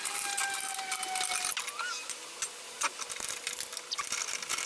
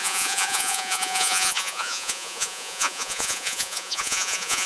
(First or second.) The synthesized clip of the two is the second